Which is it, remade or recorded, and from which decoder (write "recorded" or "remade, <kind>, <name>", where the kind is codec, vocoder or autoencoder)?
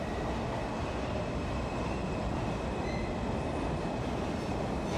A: recorded